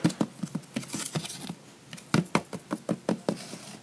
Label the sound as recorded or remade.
recorded